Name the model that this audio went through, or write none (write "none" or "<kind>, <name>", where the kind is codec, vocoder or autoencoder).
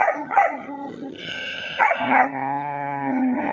vocoder, HiFi-GAN